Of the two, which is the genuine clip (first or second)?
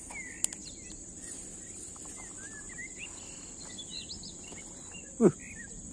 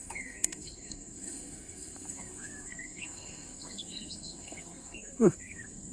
first